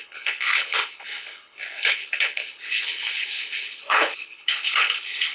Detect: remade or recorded remade